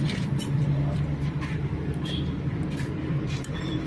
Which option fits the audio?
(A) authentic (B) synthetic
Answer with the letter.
B